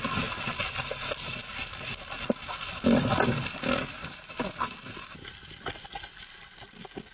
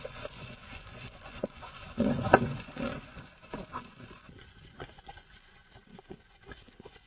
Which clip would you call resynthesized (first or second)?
second